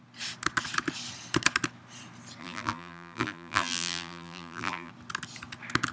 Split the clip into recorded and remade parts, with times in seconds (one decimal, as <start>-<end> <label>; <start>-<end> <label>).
0.0-2.4 recorded; 2.4-4.9 remade; 4.9-5.9 recorded